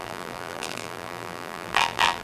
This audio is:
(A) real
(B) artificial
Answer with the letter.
B